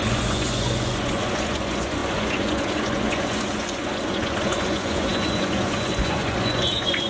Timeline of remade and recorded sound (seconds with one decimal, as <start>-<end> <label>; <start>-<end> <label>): 0.0-7.1 remade